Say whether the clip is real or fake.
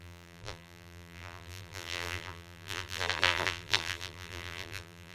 fake